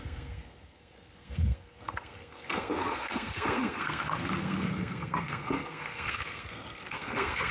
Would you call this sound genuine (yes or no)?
no